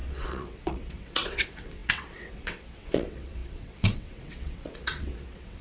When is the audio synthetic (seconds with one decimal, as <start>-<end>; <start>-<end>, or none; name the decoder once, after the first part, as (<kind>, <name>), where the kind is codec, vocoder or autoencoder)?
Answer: 0.0-5.6 (vocoder, WaveNeXt)